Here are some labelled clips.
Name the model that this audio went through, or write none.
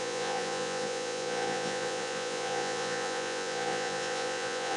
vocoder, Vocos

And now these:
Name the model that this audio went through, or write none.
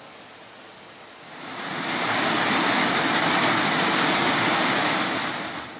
none